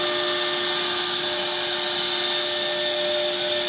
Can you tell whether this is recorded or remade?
recorded